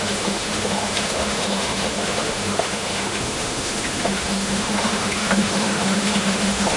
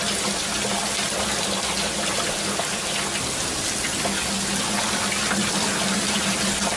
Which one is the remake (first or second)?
first